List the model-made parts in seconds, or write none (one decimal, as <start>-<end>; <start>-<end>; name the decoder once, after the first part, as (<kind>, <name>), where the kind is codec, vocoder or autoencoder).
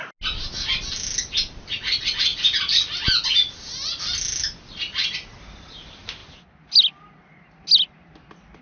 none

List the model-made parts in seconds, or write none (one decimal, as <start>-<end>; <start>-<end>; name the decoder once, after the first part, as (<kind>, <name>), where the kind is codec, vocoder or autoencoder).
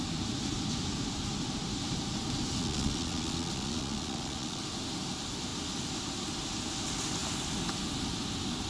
2.6-4.6 (vocoder, Vocos)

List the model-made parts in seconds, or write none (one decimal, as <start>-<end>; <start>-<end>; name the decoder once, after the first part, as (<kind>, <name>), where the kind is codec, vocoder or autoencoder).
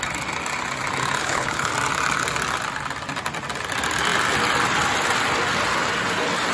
1.2-1.7 (codec, HILCodec)